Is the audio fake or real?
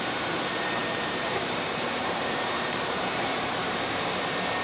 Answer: fake